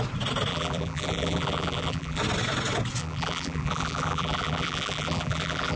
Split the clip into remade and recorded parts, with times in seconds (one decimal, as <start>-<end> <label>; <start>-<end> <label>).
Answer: 0.0-0.5 recorded; 0.5-2.2 remade; 2.2-3.0 recorded; 3.0-5.8 remade